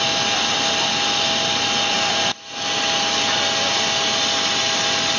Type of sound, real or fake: real